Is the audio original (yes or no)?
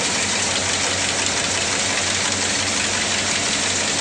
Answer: yes